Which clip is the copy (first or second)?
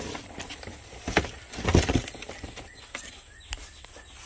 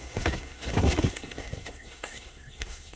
second